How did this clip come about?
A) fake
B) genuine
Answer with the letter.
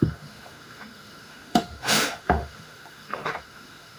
A